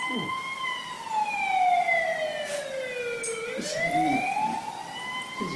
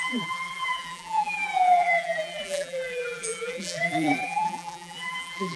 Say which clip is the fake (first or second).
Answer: second